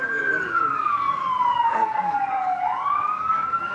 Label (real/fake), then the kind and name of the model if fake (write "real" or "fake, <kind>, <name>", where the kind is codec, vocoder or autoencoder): fake, codec, DAC